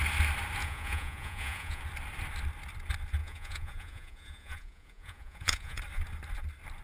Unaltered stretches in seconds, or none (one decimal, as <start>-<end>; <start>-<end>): 0.0-0.6; 1.8-3.2; 5.8-6.8

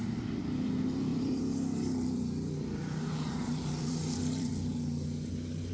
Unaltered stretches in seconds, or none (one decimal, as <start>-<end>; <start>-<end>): 0.0-1.1; 4.5-5.7

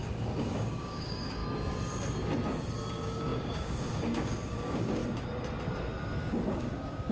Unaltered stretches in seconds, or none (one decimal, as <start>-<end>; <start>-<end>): 1.4-2.9; 5.0-6.2

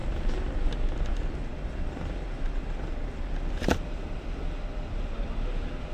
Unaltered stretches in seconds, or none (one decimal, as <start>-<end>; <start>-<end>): 0.0-1.5; 5.0-5.9

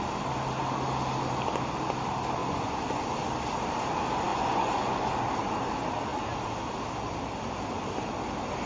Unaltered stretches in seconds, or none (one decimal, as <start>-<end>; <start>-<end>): 0.0-2.4; 3.0-4.3; 5.1-8.7

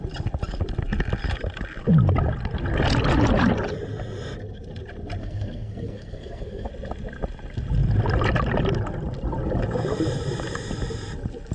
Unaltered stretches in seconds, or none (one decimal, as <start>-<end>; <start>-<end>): 0.0-5.2; 6.7-11.5